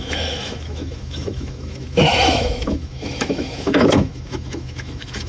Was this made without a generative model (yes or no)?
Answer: no